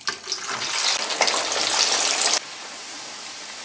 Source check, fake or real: real